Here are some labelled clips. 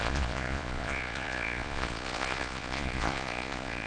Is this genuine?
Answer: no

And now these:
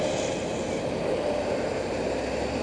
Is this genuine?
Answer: yes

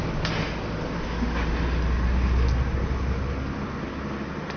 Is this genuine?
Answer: yes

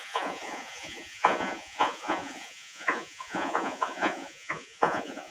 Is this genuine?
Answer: no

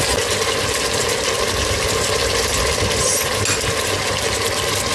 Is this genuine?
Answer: yes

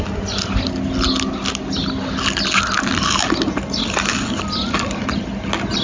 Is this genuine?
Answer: yes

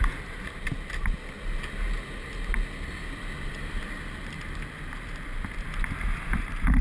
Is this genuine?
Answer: yes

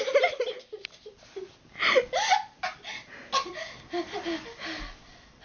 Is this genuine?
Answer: yes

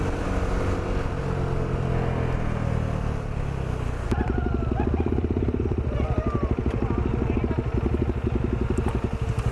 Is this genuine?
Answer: yes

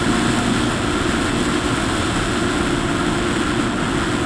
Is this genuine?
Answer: yes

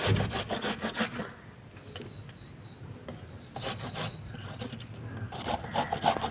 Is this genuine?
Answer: yes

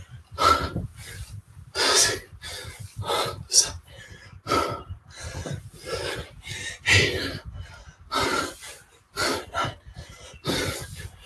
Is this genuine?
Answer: yes